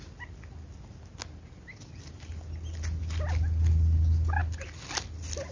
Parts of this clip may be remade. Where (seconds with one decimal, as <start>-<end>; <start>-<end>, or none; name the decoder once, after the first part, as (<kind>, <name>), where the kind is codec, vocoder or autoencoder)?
none